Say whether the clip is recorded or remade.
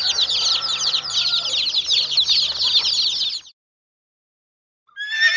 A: recorded